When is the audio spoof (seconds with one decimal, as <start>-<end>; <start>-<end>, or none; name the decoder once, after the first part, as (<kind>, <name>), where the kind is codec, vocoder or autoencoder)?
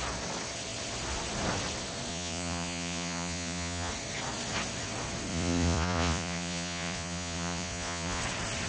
2.1-3.9 (vocoder, Vocos); 5.3-8.2